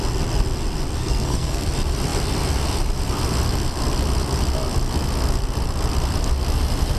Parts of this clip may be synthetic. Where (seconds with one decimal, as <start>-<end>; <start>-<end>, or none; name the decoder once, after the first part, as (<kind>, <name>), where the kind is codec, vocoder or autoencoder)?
1.0-1.7 (codec, SNAC)